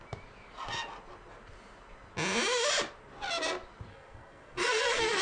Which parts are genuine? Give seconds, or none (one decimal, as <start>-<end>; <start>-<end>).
0.0-3.9